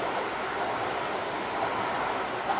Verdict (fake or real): real